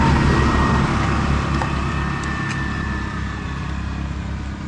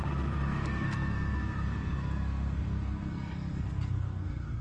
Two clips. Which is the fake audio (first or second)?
second